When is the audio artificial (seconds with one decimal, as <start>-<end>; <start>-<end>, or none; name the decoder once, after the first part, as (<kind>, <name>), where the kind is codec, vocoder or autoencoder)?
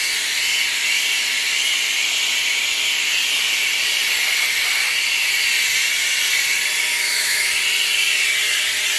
6.9-7.5 (autoencoder, DAC-VAE)